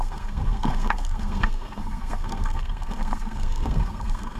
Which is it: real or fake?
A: fake